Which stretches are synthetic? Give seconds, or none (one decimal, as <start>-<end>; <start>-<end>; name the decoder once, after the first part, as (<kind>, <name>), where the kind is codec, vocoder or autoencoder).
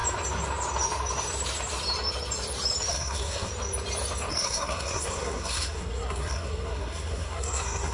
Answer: 2.9-3.5 (codec, SNAC); 4.3-7.9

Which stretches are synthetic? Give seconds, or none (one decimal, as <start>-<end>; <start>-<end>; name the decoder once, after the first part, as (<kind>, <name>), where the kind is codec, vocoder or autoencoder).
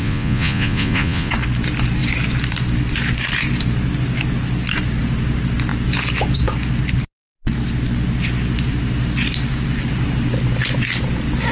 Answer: 0.0-1.3 (vocoder, Vocos)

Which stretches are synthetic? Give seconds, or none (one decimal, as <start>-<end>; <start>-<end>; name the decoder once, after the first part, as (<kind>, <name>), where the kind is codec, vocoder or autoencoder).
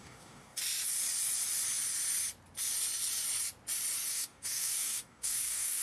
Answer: 0.0-0.6 (codec, DAC); 4.1-5.8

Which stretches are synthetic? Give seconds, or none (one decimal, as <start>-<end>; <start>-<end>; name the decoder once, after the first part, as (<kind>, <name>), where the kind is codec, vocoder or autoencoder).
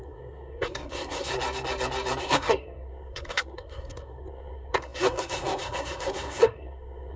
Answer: 0.0-1.3 (codec, SNAC); 2.2-7.2